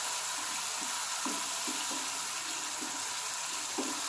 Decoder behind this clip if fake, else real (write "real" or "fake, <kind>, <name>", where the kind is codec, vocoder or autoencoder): real